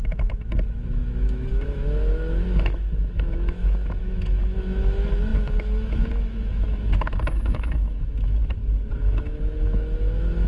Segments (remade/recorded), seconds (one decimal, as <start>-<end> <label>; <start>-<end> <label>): 0.0-8.4 remade; 8.4-9.0 recorded; 9.0-10.5 remade